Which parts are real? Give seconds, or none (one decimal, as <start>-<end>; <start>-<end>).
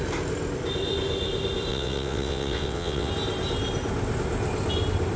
0.0-1.7; 3.1-5.2